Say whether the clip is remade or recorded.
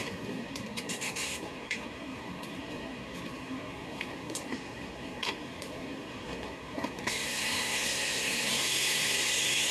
remade